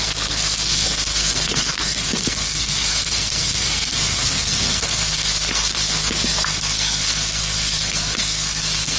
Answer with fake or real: fake